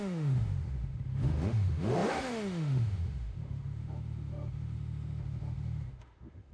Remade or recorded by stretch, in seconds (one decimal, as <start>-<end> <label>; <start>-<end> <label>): 0.0-6.5 remade